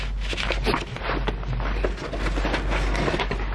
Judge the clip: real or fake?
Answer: real